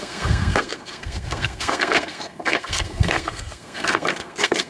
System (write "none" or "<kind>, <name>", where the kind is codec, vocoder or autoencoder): codec, SNAC